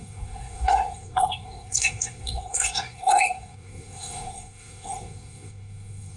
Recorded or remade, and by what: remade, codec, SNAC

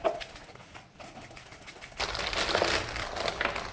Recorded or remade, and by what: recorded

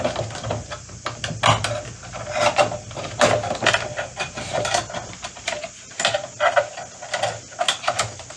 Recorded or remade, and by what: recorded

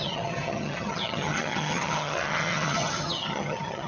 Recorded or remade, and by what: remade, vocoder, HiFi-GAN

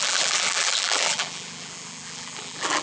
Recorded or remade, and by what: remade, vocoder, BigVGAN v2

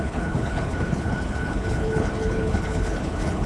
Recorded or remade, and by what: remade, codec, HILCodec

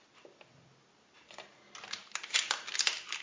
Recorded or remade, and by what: recorded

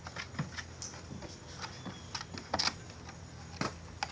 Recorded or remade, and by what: recorded